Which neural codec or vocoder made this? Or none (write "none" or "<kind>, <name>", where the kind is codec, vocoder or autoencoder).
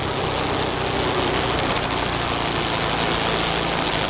none